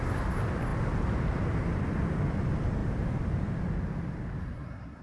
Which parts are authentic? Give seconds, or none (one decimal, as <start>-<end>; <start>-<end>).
0.0-4.4